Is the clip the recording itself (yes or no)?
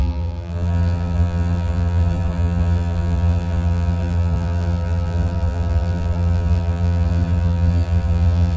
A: no